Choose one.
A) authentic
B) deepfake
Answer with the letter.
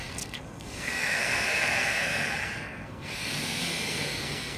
B